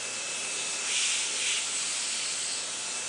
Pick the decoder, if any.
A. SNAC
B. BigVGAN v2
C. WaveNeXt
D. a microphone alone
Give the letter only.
D